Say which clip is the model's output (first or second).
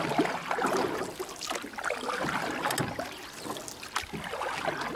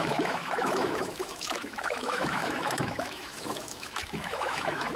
second